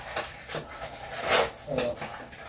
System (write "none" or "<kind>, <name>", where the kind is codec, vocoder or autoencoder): none